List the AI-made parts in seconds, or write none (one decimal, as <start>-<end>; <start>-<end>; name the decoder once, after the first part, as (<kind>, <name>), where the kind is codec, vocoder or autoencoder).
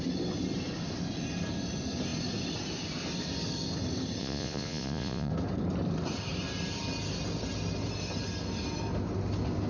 4.2-5.3 (vocoder, Vocos)